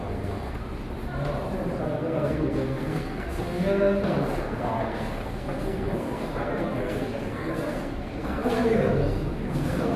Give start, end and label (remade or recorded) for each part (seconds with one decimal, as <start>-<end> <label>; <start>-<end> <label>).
0.0-0.6 remade; 0.6-1.8 recorded; 1.8-10.0 remade